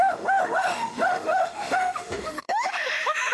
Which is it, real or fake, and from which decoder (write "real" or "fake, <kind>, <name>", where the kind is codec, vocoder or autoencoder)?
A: fake, autoencoder, DAC-VAE